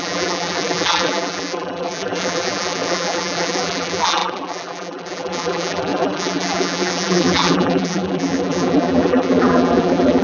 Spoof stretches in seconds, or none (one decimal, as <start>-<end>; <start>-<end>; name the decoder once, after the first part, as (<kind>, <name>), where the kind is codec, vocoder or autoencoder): 0.0-10.2 (vocoder, BigVGAN v2)